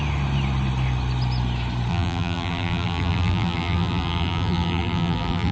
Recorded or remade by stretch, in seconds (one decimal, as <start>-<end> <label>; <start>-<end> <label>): 0.0-1.9 recorded; 1.9-5.5 remade